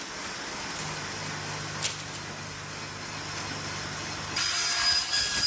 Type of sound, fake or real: real